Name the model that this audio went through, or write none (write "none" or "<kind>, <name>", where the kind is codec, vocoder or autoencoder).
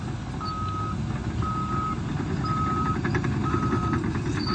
none